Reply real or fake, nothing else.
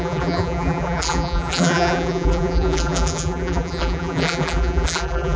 fake